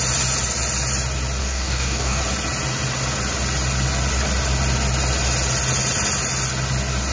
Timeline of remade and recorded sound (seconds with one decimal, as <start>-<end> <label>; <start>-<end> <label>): 0.0-1.4 recorded; 1.4-2.2 remade; 2.2-7.1 recorded